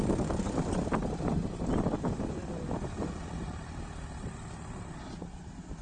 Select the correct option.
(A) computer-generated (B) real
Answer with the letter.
A